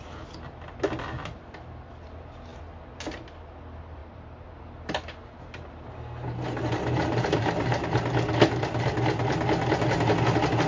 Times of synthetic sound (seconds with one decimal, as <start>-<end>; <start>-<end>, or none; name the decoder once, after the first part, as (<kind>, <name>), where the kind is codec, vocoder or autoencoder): 4.0-4.5 (vocoder, BigVGAN v2); 5.2-8.0